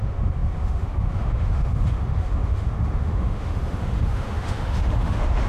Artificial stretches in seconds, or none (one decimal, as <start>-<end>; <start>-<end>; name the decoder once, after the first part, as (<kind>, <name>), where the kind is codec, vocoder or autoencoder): 0.0-5.5 (autoencoder, DAC-VAE)